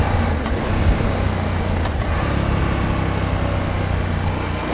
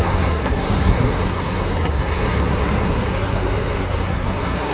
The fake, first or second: second